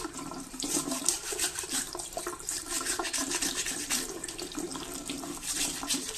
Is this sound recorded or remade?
remade